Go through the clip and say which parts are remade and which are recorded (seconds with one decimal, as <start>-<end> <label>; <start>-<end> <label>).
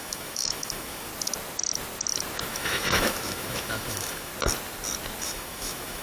0.0-1.1 remade; 1.1-2.5 recorded; 2.5-4.3 remade; 4.3-5.2 recorded; 5.2-6.0 remade